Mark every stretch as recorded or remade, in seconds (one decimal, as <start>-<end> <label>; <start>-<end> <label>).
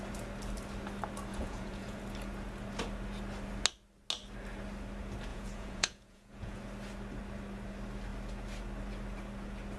0.0-1.3 recorded; 1.3-2.0 remade; 2.0-5.3 recorded; 5.3-6.6 remade; 6.6-9.8 recorded